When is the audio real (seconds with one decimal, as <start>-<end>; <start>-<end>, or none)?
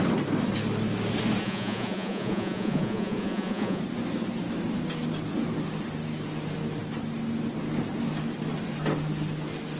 0.0-1.4; 3.8-9.8